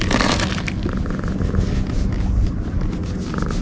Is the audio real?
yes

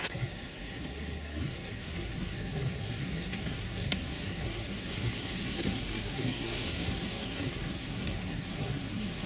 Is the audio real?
no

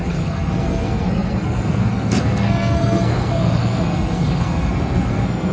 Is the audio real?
no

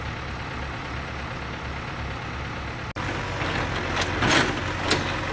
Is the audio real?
yes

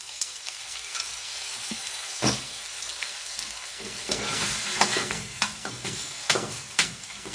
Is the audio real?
no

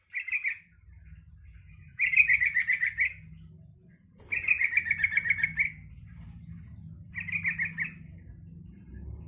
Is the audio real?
yes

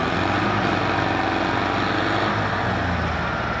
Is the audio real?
yes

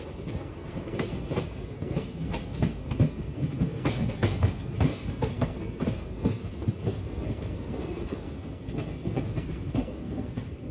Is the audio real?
no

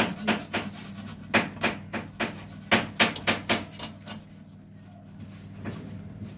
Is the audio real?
yes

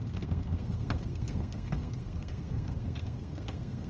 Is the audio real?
no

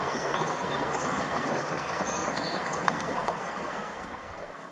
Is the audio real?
no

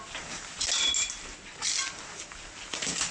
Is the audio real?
yes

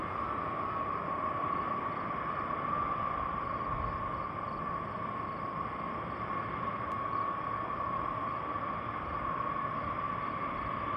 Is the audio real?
yes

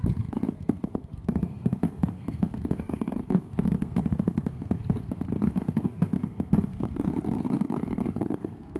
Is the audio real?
no